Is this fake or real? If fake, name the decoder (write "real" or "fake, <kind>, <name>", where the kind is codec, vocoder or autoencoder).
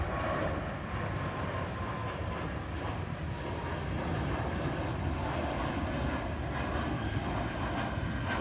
real